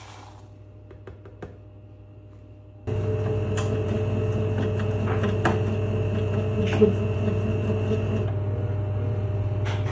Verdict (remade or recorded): recorded